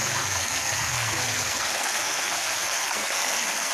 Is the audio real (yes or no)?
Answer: no